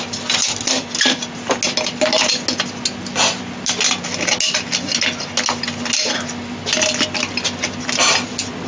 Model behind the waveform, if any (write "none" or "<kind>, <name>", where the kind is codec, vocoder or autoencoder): none